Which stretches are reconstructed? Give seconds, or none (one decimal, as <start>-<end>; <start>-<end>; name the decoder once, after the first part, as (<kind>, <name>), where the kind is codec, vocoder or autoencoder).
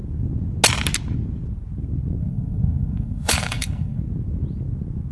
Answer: 2.2-4.0 (codec, SNAC)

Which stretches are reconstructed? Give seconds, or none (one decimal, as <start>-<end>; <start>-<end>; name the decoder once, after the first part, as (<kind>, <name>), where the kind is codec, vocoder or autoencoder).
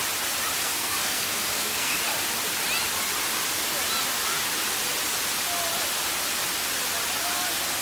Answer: 0.6-2.0 (codec, SNAC)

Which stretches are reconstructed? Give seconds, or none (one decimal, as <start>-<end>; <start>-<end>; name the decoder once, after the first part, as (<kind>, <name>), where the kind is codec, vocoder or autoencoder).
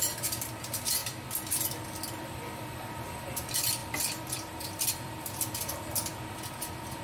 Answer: 0.0-1.0 (vocoder, BigVGAN v2); 2.1-6.1; 6.6-7.0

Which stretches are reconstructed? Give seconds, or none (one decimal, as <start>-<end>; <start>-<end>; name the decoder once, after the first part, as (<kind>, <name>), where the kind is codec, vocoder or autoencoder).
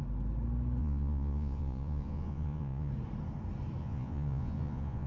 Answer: 0.8-2.9 (vocoder, Vocos); 3.8-5.1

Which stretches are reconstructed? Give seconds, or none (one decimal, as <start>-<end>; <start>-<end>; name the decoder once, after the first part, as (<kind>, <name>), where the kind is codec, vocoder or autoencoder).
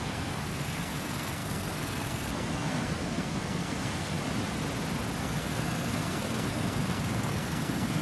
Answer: 0.0-4.2 (codec, SNAC); 5.2-8.0